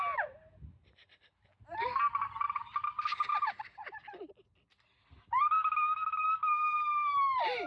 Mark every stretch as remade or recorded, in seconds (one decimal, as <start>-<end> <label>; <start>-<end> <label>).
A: 0.0-7.7 recorded